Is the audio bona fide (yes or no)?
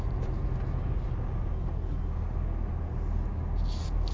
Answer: yes